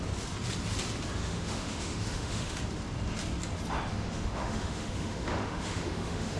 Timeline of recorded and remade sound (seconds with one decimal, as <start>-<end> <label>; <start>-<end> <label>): 0.0-1.2 recorded; 1.2-2.6 remade; 2.6-3.9 recorded; 3.9-6.4 remade

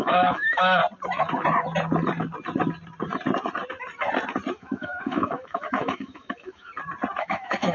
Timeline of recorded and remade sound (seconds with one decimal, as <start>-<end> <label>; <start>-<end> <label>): 0.0-0.8 remade; 0.8-4.5 recorded; 4.5-6.7 remade; 6.7-7.2 recorded; 7.2-7.7 remade

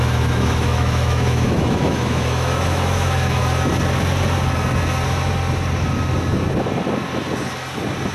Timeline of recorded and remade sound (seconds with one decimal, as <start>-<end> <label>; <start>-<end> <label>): 0.0-3.4 remade; 3.4-8.1 recorded

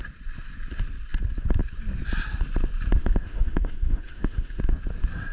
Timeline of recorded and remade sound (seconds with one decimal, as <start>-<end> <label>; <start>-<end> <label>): 0.0-3.0 recorded; 3.0-4.6 remade; 4.6-5.3 recorded